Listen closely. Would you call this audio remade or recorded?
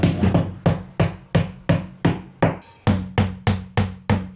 recorded